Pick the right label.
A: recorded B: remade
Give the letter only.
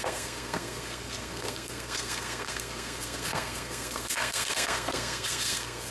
B